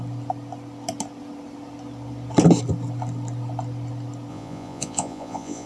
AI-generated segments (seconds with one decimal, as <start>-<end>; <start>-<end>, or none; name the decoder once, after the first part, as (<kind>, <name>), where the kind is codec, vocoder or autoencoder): 4.3-5.7 (vocoder, Vocos)